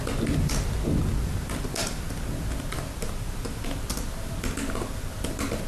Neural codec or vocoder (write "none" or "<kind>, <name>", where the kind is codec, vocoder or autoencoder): none